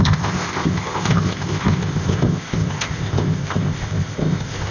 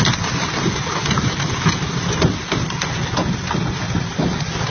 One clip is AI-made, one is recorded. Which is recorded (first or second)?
second